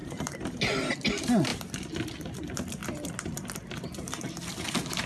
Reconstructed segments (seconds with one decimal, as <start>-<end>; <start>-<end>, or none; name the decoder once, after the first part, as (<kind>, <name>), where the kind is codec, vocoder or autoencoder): none